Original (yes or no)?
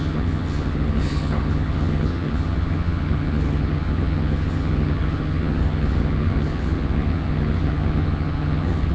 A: no